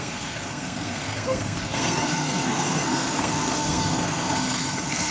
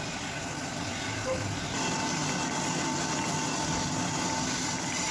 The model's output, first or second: first